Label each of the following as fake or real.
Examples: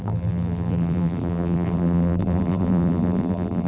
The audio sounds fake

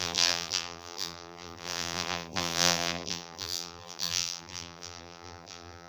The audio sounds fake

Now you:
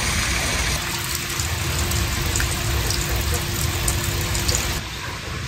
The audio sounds real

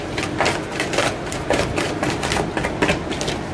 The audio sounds real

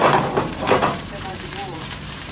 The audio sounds fake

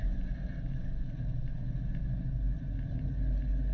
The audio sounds real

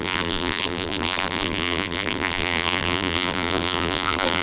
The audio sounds fake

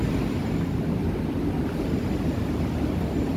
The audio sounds real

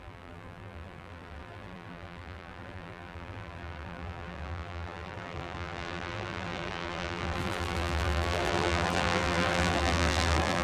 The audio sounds fake